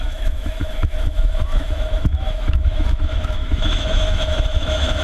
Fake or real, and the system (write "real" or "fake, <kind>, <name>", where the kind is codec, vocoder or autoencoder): fake, autoencoder, DAC-VAE